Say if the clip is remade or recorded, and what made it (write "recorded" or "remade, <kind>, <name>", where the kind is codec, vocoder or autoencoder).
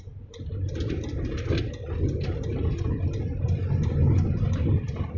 recorded